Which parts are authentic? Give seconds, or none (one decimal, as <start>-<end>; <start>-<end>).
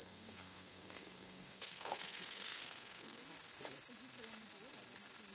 3.2-5.3